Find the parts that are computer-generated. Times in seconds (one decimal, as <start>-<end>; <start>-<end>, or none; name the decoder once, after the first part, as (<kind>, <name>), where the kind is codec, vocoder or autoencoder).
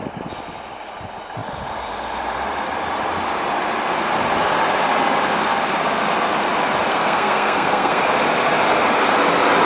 6.9-8.0 (codec, SNAC)